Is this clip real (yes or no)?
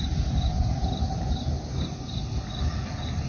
yes